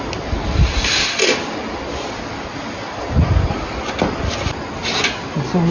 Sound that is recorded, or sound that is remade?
recorded